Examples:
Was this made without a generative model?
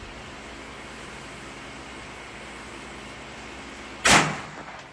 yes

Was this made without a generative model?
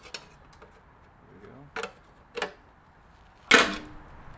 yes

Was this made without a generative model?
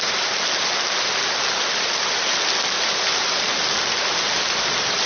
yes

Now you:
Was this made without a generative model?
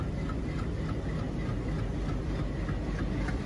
yes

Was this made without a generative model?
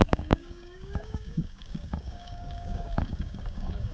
no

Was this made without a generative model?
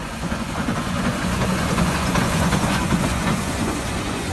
no